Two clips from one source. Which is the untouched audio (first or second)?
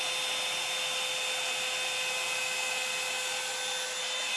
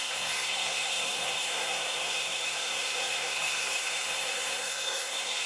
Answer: first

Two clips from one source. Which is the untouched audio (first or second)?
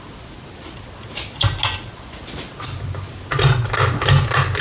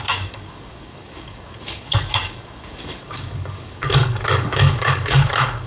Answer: first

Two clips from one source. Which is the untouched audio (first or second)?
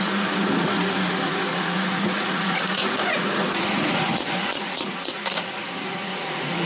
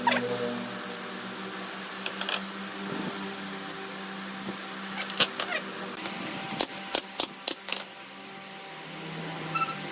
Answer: second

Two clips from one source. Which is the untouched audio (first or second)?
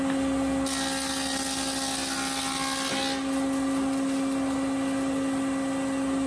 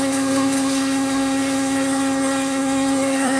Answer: first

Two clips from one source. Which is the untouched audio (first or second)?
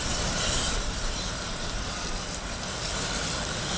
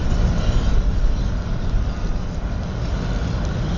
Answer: second